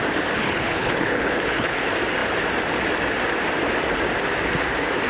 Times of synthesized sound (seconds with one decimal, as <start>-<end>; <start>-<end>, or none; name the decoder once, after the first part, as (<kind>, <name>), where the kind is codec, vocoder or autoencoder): 0.4-1.8 (codec, HILCodec)